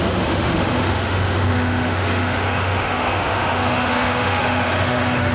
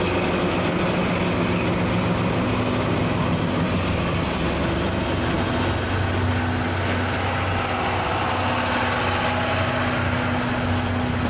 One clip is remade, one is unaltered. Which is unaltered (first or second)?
second